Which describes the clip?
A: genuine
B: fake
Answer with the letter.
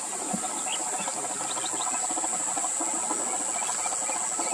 A